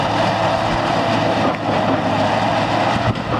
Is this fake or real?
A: real